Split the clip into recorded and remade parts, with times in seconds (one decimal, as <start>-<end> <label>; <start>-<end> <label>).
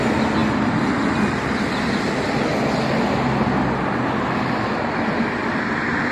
0.0-6.1 recorded